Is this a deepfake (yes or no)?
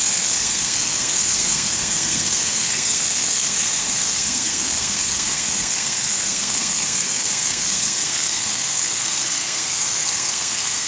yes